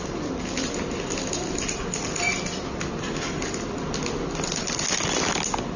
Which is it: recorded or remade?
recorded